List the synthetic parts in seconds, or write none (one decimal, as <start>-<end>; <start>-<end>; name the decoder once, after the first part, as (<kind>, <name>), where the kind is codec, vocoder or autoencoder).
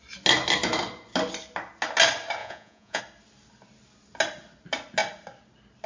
2.4-3.0 (vocoder, Vocos)